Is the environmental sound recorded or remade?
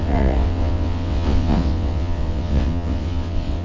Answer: remade